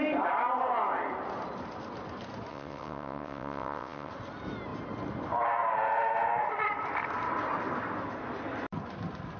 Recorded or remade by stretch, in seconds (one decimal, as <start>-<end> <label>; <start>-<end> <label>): 0.0-2.5 recorded; 2.5-4.1 remade; 4.1-9.4 recorded